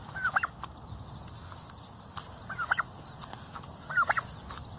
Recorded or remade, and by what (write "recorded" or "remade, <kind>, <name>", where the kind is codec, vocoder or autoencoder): recorded